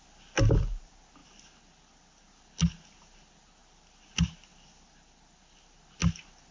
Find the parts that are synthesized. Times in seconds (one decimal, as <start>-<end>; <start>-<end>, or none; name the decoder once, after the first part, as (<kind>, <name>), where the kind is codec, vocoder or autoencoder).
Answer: none